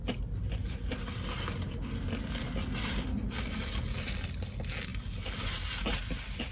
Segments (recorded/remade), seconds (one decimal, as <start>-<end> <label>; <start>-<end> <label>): 0.0-6.5 recorded